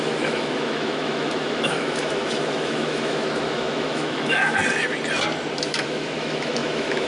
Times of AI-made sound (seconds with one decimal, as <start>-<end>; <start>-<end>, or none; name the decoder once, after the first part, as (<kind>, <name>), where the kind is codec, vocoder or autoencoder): 0.0-4.6 (autoencoder, DAC-VAE); 5.7-7.1